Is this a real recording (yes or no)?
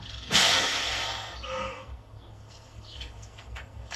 no